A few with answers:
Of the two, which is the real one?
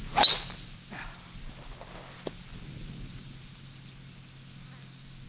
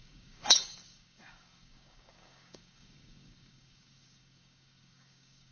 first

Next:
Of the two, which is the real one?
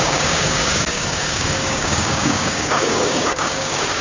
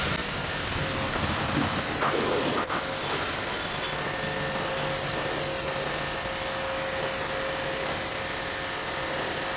second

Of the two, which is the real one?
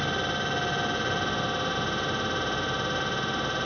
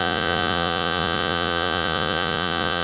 first